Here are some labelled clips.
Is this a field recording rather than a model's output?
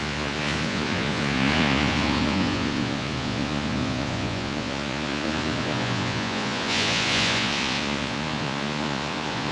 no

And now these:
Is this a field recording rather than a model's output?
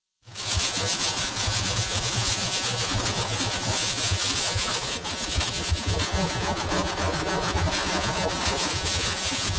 no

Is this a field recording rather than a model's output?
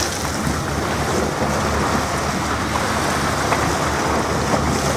yes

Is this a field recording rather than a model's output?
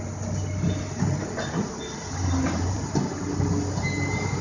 yes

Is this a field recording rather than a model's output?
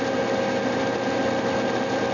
yes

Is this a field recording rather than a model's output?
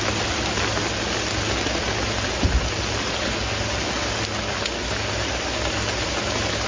yes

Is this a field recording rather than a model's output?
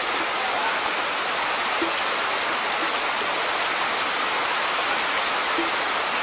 yes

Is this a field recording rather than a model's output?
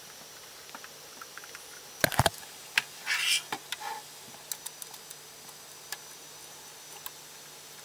yes